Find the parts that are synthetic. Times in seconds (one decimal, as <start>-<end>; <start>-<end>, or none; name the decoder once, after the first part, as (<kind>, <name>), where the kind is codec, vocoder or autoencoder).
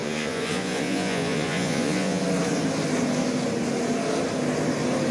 0.0-2.2 (vocoder, Vocos)